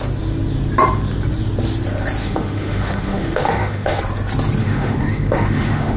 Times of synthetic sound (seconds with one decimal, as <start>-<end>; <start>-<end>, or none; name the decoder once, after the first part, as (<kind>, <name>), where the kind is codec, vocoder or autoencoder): 2.2-4.0 (autoencoder, DAC-VAE); 4.6-6.0